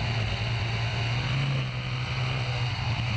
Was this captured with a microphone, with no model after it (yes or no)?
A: yes